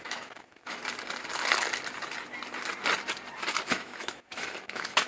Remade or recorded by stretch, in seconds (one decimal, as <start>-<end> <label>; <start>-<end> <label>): 0.0-0.8 remade; 0.8-3.7 recorded; 3.7-5.1 remade